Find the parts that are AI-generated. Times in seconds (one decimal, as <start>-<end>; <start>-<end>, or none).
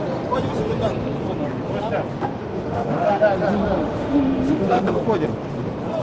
2.4-3.2; 3.8-5.0